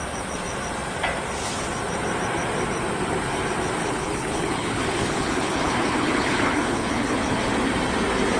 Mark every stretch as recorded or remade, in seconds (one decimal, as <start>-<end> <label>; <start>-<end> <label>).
0.0-3.8 recorded; 3.8-7.4 remade; 7.4-8.4 recorded